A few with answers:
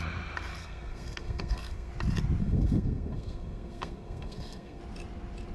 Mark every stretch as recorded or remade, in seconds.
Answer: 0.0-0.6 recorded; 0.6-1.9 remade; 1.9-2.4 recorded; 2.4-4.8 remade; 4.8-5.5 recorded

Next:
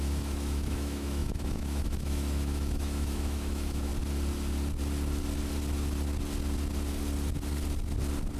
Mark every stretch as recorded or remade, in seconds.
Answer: 0.0-3.9 remade; 3.9-8.4 recorded

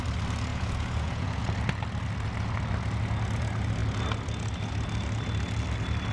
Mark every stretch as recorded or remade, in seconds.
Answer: 0.0-0.5 recorded; 0.5-1.4 remade; 1.4-6.1 recorded